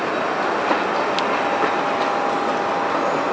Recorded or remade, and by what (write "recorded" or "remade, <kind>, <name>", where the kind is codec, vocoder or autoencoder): recorded